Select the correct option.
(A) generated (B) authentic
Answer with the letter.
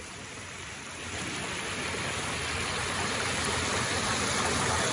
B